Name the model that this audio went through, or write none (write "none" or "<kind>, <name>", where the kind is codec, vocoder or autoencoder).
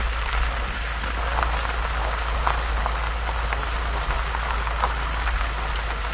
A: none